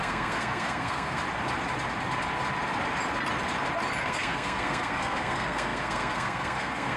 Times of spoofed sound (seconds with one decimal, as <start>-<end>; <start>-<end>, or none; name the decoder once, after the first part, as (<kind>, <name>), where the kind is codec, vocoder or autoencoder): 0.0-1.2 (codec, SNAC); 4.0-7.0